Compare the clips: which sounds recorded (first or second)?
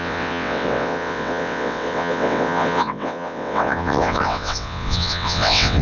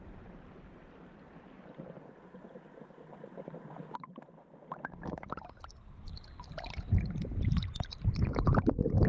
second